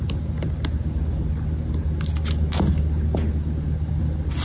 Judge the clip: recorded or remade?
recorded